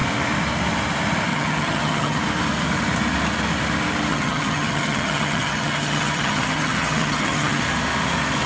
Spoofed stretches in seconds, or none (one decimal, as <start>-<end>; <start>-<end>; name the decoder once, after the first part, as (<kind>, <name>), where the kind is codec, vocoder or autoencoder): 1.3-2.2 (vocoder, HiFi-GAN); 4.1-7.6